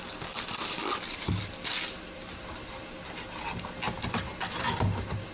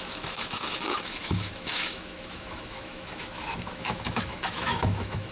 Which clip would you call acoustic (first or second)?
first